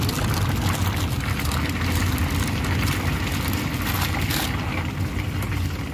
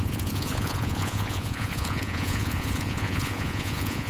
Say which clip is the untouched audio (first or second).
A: first